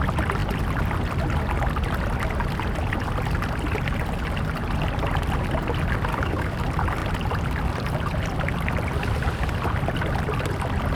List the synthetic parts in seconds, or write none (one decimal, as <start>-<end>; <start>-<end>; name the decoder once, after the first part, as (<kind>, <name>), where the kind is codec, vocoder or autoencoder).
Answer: 6.1-6.6 (codec, DAC)